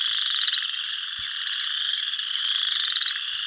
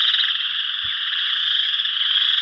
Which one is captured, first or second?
first